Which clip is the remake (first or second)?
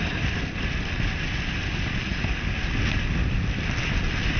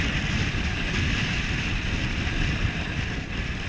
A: second